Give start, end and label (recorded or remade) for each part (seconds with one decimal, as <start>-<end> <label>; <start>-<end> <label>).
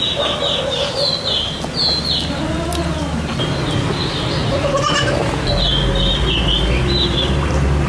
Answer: 0.0-7.9 recorded